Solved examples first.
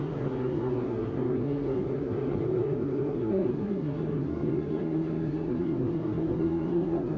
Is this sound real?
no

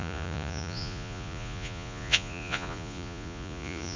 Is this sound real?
no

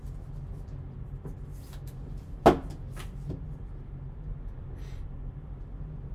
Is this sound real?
yes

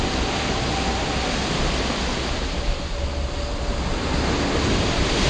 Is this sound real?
yes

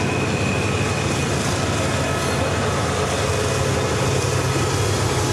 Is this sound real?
yes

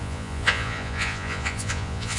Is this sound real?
no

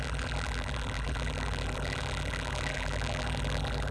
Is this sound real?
no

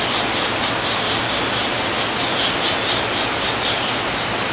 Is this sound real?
yes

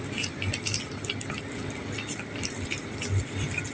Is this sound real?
yes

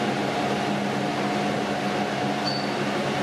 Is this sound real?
yes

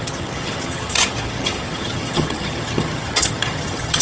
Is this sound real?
no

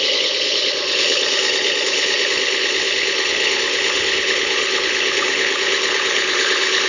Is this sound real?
no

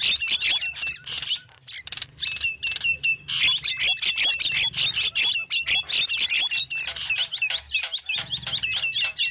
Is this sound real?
yes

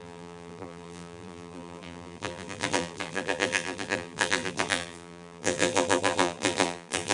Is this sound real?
no